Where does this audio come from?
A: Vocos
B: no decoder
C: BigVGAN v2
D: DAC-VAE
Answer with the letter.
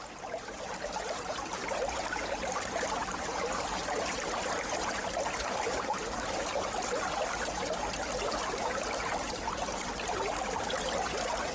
B